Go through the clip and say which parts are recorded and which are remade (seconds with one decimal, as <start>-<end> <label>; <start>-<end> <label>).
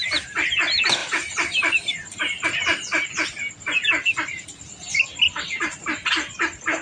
0.0-6.8 recorded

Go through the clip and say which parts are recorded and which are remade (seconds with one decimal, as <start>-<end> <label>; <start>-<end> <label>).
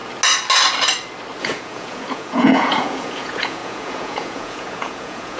0.0-1.4 recorded; 1.4-5.4 remade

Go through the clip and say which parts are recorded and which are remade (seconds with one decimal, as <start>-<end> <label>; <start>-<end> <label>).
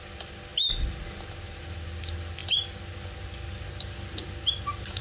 0.0-5.0 recorded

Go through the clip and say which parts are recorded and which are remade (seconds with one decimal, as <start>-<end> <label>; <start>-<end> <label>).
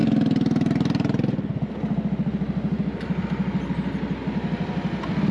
0.0-5.3 recorded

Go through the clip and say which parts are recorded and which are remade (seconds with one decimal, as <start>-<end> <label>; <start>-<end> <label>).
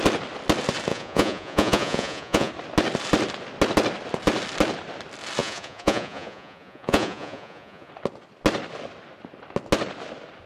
0.0-0.9 recorded; 0.9-2.5 remade; 2.5-5.4 recorded; 5.4-7.9 remade; 7.9-10.5 recorded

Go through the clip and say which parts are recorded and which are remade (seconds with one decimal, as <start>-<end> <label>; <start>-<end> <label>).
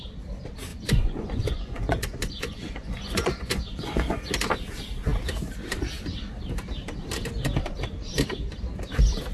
0.0-0.7 recorded; 0.7-4.3 remade; 4.3-9.3 recorded